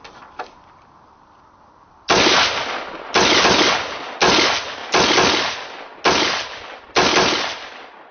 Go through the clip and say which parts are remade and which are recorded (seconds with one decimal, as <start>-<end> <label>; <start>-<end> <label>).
0.0-8.1 recorded